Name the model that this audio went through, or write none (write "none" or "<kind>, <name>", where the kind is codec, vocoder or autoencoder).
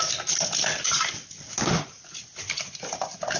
none